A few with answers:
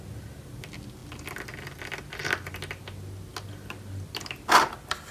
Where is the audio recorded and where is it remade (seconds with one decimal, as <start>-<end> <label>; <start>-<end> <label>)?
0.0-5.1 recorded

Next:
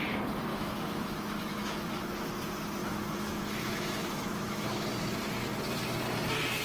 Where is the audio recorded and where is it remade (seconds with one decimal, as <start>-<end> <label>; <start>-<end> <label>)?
0.0-0.5 recorded; 0.5-2.1 remade; 2.1-2.8 recorded; 2.8-5.0 remade; 5.0-6.6 recorded

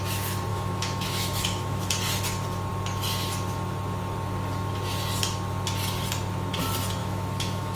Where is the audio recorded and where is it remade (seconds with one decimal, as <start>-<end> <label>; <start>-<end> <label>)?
0.0-0.5 recorded; 0.5-1.9 remade; 1.9-7.0 recorded; 7.0-7.8 remade

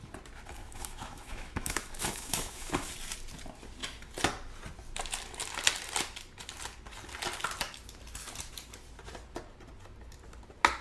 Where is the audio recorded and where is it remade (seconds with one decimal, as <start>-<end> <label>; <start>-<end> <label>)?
0.0-0.6 recorded; 0.6-2.9 remade; 2.9-10.8 recorded

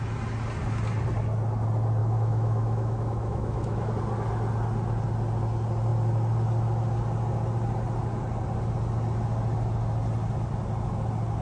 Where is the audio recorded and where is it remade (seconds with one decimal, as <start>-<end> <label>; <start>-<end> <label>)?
0.0-2.0 recorded; 2.0-3.9 remade; 3.9-11.4 recorded